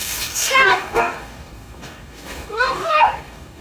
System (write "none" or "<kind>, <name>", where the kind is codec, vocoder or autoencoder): codec, DAC